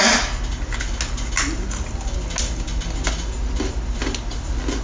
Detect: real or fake real